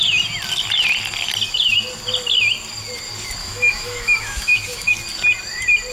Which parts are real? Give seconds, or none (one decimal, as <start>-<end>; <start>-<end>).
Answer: 0.0-3.4; 4.9-5.9